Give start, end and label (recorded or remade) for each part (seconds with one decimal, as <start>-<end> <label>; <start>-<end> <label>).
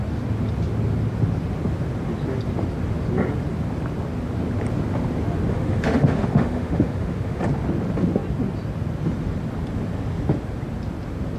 0.0-5.5 recorded; 5.5-7.4 remade; 7.4-11.4 recorded